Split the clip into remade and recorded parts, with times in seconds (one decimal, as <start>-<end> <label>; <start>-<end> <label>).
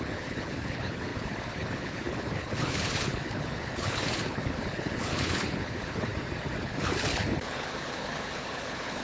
0.0-6.1 remade; 6.1-6.6 recorded; 6.6-9.0 remade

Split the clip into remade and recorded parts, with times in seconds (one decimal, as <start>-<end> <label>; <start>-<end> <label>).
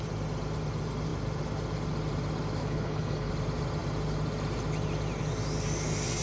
0.0-2.6 recorded; 2.6-3.3 remade; 3.3-6.2 recorded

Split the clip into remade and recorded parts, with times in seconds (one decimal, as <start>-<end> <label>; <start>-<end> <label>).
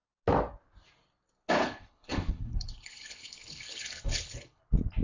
0.0-1.6 recorded; 1.6-4.6 remade; 4.6-5.0 recorded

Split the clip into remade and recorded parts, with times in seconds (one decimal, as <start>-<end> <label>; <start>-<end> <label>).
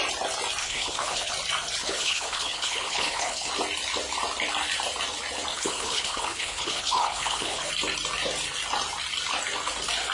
0.0-0.6 recorded; 0.6-1.3 remade; 1.3-1.8 recorded; 1.8-3.5 remade; 3.5-5.5 recorded; 5.5-7.7 remade; 7.7-10.1 recorded